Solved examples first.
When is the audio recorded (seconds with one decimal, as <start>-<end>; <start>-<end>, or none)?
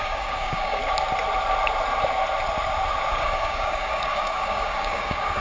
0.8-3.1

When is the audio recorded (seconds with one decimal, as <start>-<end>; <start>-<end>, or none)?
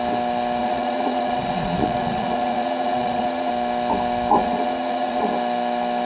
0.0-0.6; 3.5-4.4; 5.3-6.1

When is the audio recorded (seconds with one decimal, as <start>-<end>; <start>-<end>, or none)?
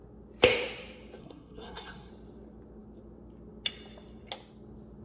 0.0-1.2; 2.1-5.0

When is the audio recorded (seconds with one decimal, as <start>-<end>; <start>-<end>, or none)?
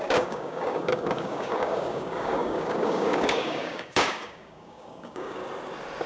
5.4-6.1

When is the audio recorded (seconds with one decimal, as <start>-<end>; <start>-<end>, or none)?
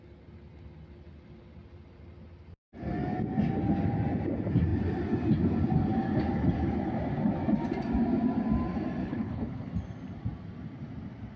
0.0-9.0; 9.7-11.4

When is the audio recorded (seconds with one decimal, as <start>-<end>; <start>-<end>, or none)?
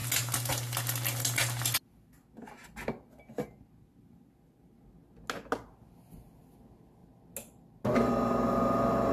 0.0-9.1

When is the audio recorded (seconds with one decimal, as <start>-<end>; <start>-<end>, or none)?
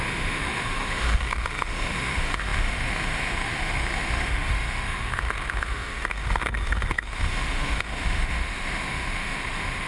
none